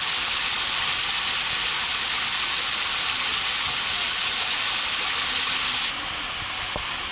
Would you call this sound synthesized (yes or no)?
no